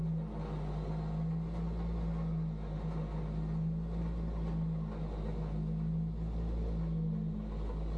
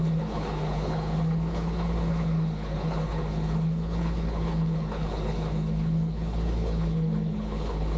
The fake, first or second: second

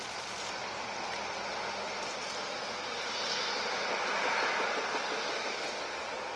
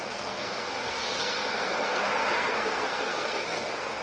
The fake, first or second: second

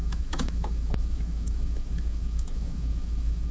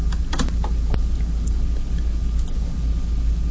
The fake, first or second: first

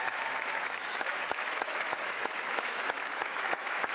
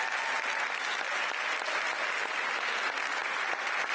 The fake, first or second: first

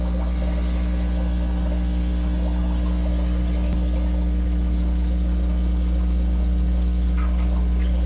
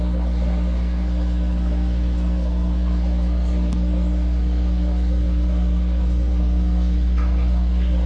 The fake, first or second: second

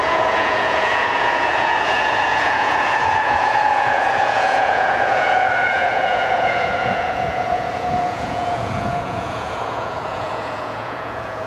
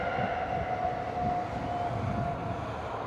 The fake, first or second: first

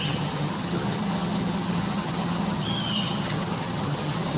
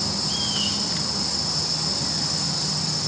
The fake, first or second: first